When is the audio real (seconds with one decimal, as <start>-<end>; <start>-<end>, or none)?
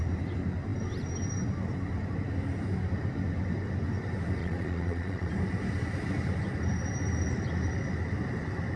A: 0.0-4.4; 5.3-8.8